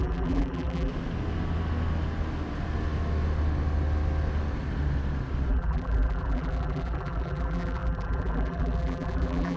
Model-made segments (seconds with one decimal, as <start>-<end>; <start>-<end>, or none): 0.0-0.9; 5.5-9.6